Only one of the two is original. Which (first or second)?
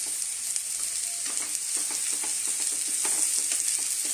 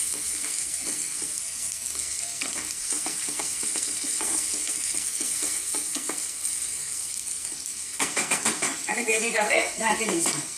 first